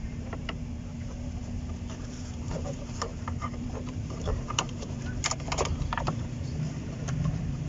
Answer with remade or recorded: remade